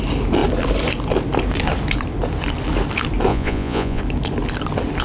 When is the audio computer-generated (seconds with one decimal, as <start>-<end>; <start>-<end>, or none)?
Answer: 3.3-4.0